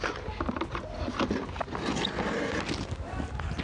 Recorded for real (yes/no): yes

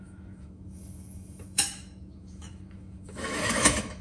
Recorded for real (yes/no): no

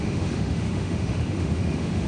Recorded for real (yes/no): no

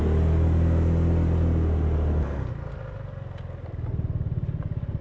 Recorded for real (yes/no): yes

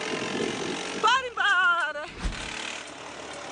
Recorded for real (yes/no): yes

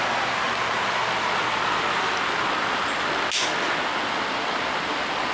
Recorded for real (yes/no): yes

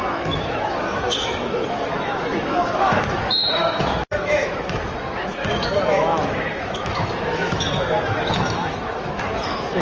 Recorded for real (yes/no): no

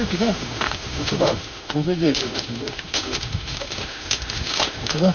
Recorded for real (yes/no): no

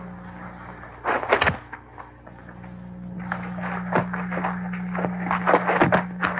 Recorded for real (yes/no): yes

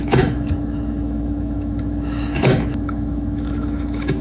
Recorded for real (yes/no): no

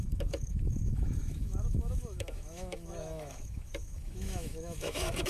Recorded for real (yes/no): no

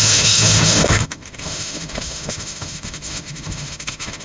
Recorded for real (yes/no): no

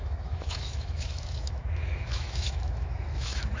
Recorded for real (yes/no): no